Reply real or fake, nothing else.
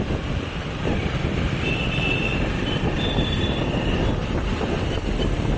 fake